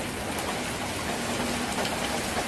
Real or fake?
real